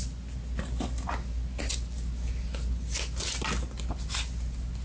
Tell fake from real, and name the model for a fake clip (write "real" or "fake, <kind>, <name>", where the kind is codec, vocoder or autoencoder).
real